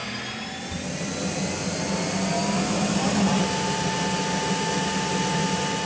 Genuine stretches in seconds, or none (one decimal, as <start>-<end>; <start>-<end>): 0.0-5.9